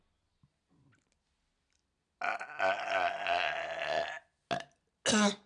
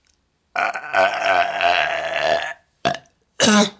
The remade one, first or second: second